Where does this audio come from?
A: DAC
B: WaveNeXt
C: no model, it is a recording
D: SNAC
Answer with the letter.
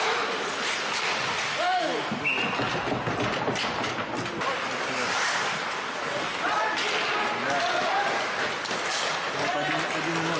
C